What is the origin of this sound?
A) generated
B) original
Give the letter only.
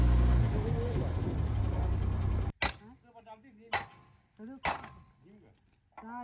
B